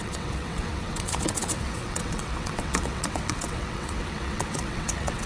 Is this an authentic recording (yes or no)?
no